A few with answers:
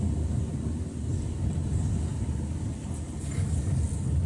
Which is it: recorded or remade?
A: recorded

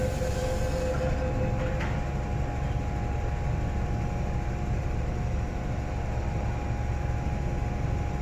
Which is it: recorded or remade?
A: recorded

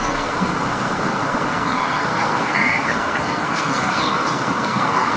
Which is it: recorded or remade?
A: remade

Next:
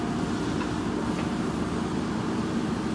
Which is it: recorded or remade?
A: recorded